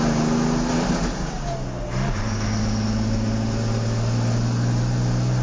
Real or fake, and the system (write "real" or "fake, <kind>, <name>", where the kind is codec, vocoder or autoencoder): real